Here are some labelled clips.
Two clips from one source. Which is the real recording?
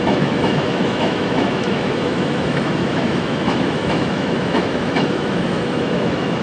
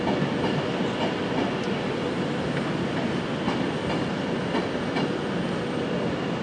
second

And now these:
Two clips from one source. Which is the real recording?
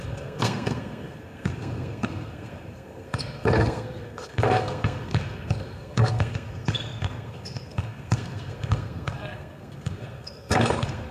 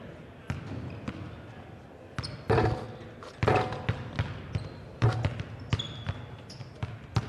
second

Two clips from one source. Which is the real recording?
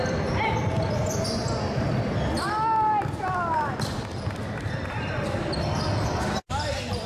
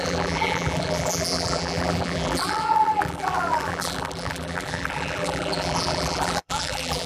first